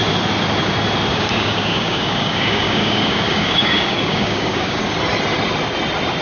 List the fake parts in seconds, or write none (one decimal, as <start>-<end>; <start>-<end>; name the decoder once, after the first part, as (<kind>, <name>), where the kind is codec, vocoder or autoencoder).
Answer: 1.1-4.8 (codec, DAC)